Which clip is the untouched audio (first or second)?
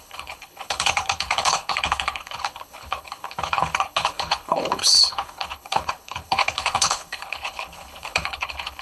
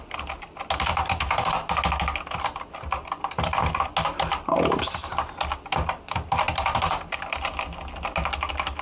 second